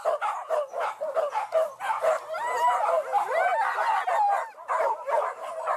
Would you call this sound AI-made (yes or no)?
no